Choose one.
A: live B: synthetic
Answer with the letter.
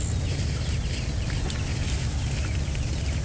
A